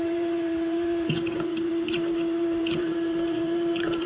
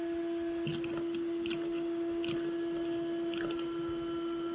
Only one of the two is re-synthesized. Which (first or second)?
first